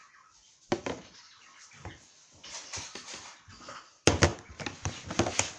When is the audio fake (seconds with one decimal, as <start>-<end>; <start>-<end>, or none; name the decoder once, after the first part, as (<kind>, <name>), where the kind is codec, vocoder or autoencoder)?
none